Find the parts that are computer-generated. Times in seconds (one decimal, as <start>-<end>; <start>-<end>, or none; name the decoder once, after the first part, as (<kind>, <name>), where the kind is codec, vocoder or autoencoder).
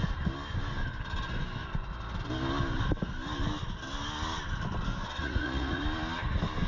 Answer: 5.2-5.8 (vocoder, Vocos)